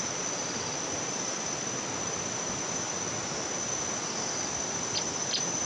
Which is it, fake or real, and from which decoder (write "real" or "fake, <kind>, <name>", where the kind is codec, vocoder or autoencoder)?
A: real